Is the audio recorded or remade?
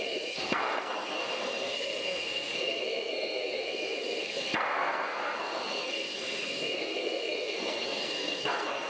remade